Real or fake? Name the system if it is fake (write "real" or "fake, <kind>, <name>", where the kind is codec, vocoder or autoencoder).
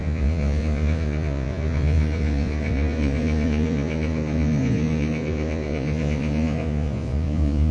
fake, vocoder, Vocos